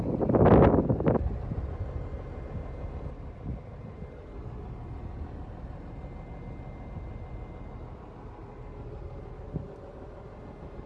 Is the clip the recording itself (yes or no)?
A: yes